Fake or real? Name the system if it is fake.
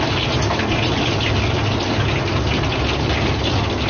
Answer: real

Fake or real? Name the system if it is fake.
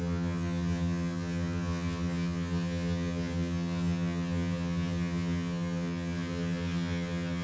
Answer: fake, vocoder, HiFi-GAN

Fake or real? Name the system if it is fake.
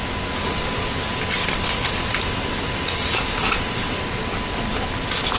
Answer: real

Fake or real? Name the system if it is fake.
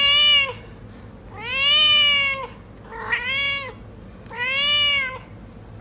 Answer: real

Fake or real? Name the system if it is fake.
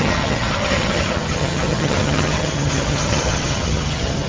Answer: fake, vocoder, HiFi-GAN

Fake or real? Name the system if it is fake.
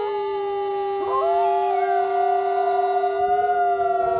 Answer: real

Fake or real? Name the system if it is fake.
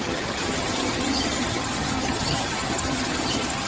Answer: fake, vocoder, HiFi-GAN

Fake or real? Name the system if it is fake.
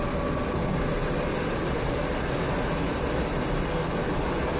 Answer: real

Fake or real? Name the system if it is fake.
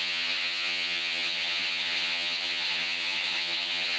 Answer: fake, vocoder, HiFi-GAN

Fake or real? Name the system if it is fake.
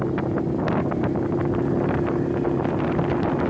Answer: real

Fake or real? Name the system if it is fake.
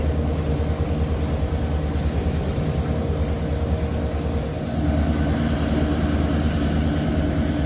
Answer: real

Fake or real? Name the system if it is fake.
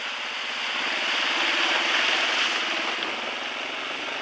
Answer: real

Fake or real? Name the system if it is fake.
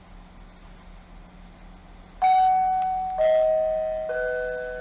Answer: real